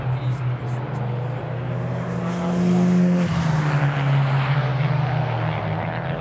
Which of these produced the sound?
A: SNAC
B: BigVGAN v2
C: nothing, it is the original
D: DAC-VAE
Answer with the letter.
C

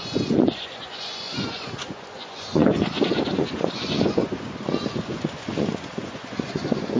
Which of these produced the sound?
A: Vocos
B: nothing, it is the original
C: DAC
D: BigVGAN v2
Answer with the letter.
A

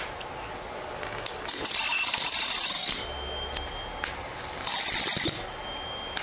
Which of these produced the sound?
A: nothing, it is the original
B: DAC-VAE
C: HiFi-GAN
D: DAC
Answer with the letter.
A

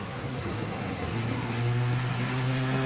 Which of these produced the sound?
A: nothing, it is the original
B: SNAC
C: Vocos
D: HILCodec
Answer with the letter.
B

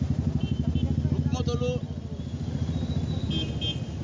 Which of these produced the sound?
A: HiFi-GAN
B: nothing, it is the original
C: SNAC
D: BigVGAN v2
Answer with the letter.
B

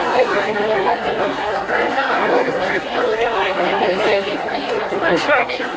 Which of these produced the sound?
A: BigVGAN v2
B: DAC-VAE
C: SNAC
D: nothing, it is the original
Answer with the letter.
C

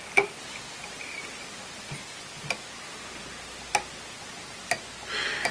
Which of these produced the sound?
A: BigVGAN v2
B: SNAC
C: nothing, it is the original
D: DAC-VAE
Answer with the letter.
C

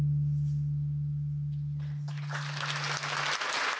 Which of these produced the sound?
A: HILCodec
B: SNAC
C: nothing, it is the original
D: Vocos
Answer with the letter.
C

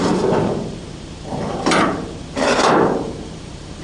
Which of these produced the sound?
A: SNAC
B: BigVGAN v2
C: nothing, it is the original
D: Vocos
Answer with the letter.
B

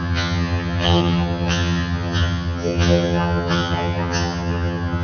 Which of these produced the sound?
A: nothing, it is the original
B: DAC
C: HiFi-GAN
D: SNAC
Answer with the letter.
C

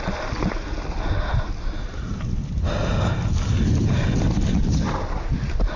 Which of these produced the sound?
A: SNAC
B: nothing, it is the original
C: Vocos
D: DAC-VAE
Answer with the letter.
B